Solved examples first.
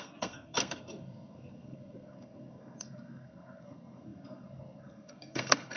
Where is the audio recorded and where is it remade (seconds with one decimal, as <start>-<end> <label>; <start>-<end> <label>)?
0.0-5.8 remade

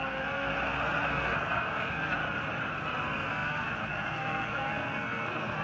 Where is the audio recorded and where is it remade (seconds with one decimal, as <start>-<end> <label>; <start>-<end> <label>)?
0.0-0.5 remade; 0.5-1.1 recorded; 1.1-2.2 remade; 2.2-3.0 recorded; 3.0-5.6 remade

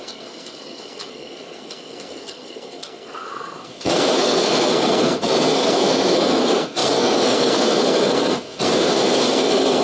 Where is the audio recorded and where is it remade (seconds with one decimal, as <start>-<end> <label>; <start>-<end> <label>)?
0.0-9.8 remade

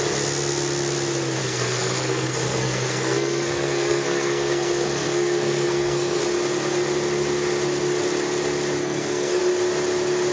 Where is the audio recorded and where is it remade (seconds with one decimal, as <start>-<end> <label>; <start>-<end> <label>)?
0.0-1.4 recorded; 1.4-6.2 remade; 6.2-8.8 recorded; 8.8-9.4 remade; 9.4-10.3 recorded

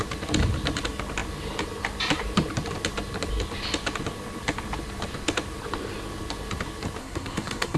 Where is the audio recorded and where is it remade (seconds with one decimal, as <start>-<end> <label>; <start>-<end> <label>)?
0.0-7.0 recorded; 7.0-7.8 remade

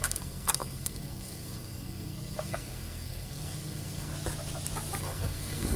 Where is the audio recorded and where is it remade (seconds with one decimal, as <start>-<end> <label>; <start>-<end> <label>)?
0.0-4.1 remade; 4.1-5.0 recorded; 5.0-5.8 remade

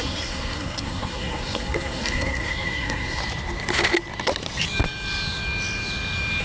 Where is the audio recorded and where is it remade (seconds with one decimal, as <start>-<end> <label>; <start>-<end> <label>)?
0.0-3.2 remade; 3.2-6.4 recorded